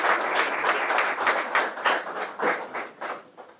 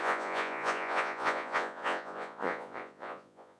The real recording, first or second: first